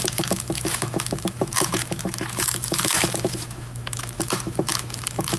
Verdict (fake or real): fake